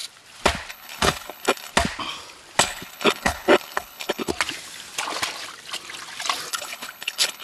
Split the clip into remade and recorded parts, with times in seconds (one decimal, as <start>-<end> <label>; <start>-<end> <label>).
0.0-0.7 recorded; 0.7-1.7 remade; 1.7-2.6 recorded; 2.6-4.3 remade; 4.3-6.5 recorded; 6.5-7.4 remade